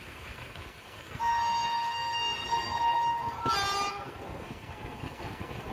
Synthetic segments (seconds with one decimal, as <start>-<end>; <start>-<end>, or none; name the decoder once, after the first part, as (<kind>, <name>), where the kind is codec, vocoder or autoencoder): 0.0-3.4 (codec, SNAC); 3.9-5.7